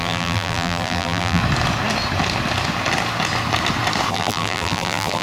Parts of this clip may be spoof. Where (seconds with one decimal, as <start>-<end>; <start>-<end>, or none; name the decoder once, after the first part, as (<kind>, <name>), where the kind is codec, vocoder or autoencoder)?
0.0-1.4 (vocoder, BigVGAN v2); 4.1-5.2